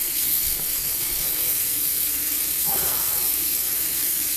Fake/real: fake